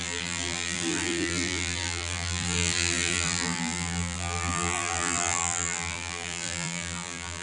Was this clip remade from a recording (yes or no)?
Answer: yes